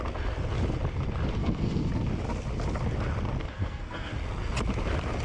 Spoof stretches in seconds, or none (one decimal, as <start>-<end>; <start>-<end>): 1.4-1.9; 3.4-4.1